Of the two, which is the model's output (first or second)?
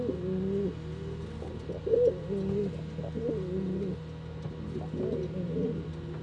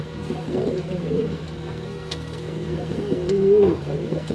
second